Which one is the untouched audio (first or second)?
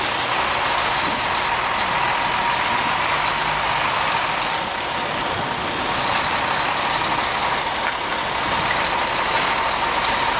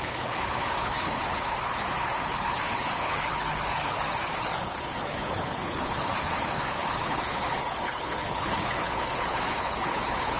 first